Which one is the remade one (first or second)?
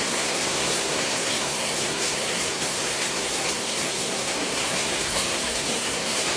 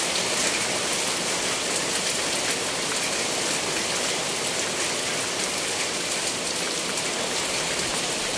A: first